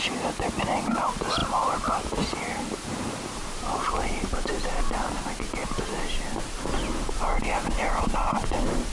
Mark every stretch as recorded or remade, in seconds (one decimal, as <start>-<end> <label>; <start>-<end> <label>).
0.0-5.6 remade; 5.6-8.0 recorded; 8.0-8.9 remade